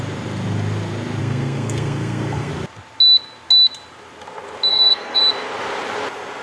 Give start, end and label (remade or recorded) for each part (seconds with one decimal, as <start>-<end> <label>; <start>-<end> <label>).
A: 0.0-1.2 recorded; 1.2-2.5 remade; 2.5-4.7 recorded; 4.7-5.2 remade; 5.2-6.4 recorded